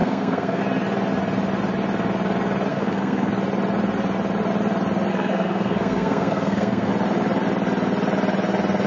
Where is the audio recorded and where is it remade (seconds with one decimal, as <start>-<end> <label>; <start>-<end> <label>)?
0.0-0.6 remade; 0.6-2.7 recorded; 2.7-3.3 remade; 3.3-5.1 recorded; 5.1-6.9 remade; 6.9-8.9 recorded